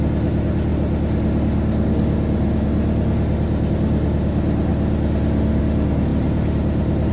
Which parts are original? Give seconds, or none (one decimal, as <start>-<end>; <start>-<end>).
0.0-6.1